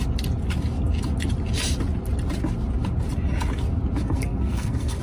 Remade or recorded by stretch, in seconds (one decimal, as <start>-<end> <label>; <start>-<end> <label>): 0.0-4.0 recorded; 4.0-5.0 remade